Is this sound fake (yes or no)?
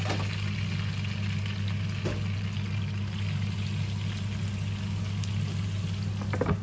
no